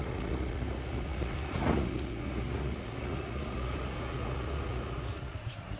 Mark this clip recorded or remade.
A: remade